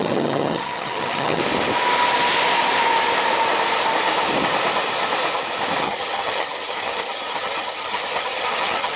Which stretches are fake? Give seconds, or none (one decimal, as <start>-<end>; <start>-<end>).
0.0-1.4; 5.8-9.0